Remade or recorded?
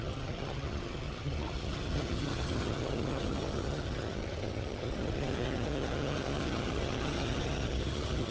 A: remade